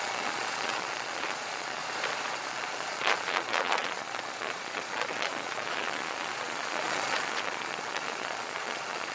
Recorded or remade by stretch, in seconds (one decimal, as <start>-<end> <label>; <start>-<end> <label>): 0.0-1.8 remade; 1.8-2.5 recorded; 2.5-9.1 remade

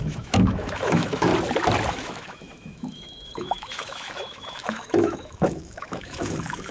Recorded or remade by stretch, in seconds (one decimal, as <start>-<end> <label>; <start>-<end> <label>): 0.0-1.3 remade; 1.3-1.9 recorded; 1.9-6.7 remade

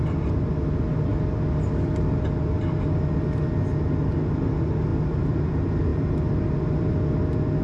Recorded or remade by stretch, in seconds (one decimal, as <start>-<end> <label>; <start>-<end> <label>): 0.0-7.6 recorded

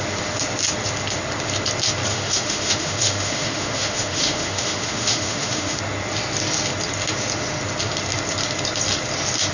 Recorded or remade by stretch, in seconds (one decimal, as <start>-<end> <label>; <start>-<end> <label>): 0.0-2.1 recorded; 2.1-5.8 remade; 5.8-9.5 recorded

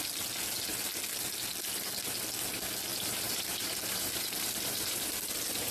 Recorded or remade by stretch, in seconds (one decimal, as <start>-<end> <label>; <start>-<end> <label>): 0.0-2.9 recorded; 2.9-5.7 remade